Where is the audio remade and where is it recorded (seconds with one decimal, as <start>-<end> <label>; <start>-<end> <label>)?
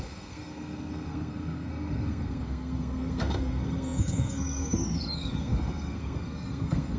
0.0-7.0 remade